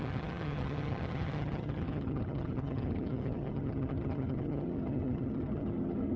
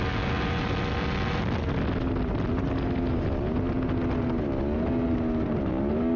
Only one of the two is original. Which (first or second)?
second